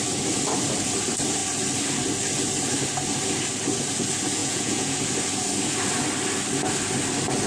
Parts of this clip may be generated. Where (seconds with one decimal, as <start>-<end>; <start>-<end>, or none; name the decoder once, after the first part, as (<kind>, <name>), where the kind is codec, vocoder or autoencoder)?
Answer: 4.4-5.0 (vocoder, Vocos)